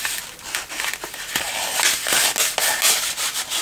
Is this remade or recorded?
recorded